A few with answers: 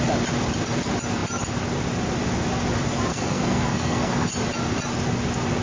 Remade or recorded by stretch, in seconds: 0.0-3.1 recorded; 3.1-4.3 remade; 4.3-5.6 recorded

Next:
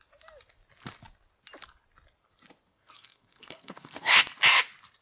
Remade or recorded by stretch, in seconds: 0.0-2.7 recorded; 2.7-4.2 remade; 4.2-5.0 recorded